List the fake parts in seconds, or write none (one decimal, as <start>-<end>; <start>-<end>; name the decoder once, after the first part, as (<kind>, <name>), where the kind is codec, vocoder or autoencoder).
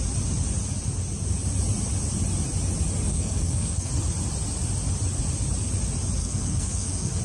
3.1-3.9 (codec, SNAC); 6.2-7.2